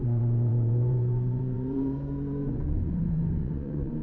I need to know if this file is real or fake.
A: fake